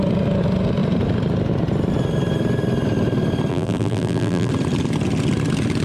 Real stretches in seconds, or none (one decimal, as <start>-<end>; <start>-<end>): 0.0-3.5; 4.5-5.8